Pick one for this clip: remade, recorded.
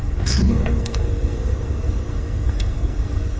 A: remade